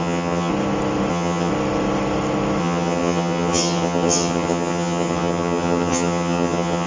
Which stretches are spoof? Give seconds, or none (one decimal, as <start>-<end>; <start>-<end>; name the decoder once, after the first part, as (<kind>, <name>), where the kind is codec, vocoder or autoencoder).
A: 0.0-0.5 (vocoder, HiFi-GAN); 1.1-1.5; 2.6-6.9